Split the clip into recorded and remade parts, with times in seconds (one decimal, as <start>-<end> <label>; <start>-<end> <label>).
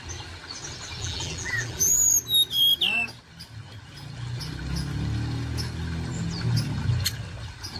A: 0.0-1.0 recorded; 1.0-2.1 remade; 2.1-7.8 recorded